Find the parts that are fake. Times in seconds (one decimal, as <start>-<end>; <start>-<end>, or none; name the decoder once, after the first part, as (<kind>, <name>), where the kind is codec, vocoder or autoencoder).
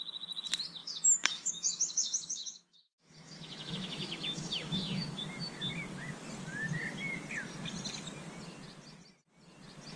0.8-5.2 (autoencoder, DAC-VAE)